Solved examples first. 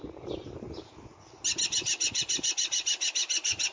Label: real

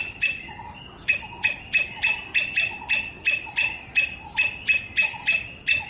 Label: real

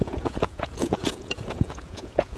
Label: fake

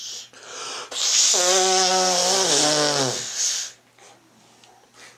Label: real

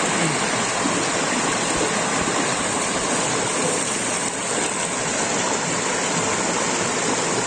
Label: real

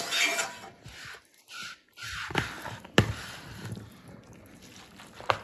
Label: real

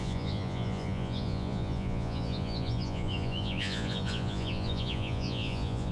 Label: fake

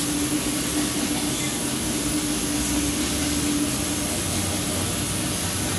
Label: real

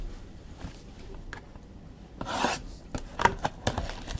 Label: real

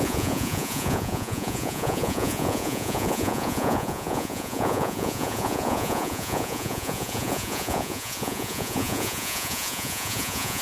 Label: fake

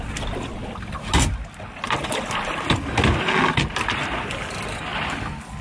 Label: real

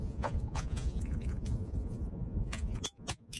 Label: fake